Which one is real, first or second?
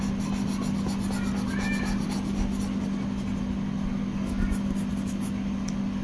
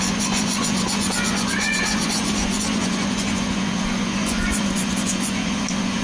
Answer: first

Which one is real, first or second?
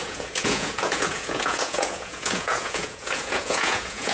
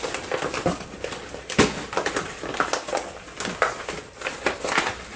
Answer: second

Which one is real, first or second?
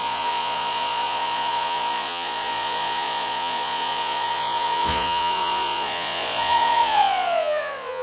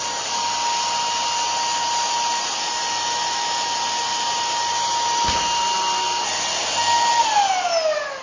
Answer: second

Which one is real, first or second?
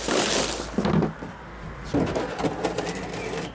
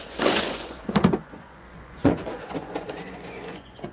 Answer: first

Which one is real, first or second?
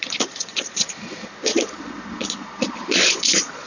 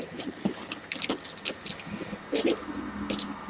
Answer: second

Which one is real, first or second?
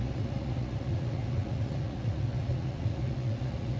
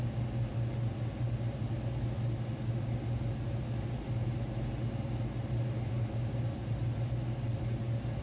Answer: second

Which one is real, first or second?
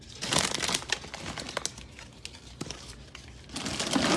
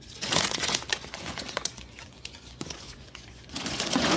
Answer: first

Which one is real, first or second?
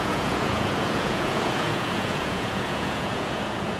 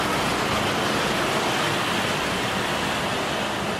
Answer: second